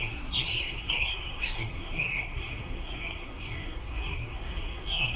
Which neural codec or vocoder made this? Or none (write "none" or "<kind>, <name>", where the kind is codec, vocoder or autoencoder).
codec, SNAC